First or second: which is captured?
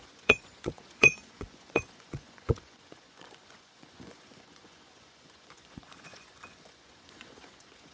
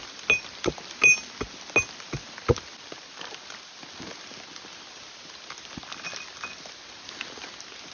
second